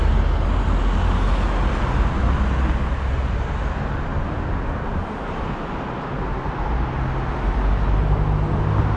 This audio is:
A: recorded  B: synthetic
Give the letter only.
A